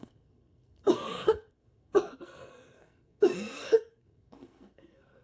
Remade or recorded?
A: remade